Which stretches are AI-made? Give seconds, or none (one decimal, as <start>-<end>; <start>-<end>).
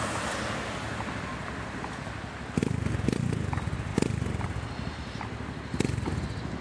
none